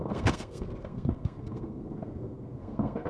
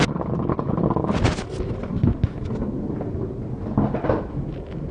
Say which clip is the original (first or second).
second